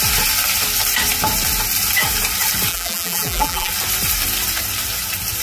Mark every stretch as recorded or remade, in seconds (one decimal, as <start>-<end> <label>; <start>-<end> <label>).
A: 0.0-2.7 recorded; 2.7-3.7 remade; 3.7-5.4 recorded